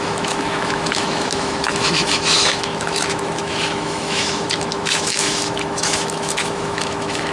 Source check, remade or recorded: remade